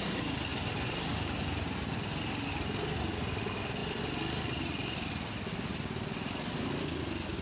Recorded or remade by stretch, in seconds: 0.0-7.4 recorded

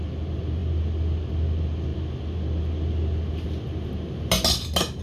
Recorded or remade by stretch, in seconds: 0.0-5.0 recorded

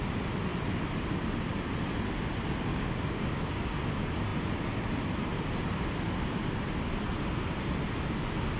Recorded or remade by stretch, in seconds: 0.0-2.7 recorded; 2.7-3.8 remade; 3.8-8.6 recorded

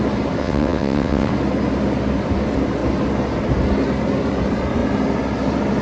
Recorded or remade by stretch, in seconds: 0.0-0.4 recorded; 0.4-1.3 remade; 1.3-5.8 recorded